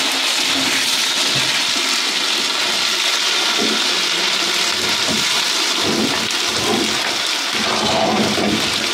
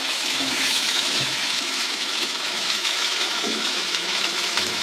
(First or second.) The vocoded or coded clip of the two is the second